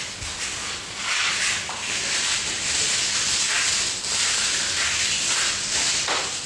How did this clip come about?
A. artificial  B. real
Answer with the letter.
B